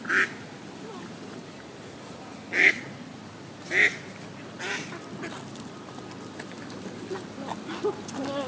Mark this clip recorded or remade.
recorded